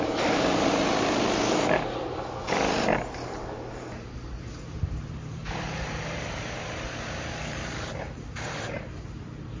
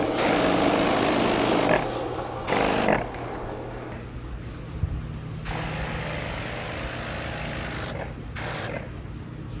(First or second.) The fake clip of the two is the first